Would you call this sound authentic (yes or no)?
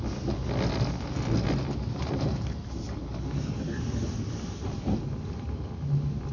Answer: yes